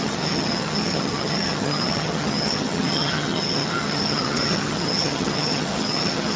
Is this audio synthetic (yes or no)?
yes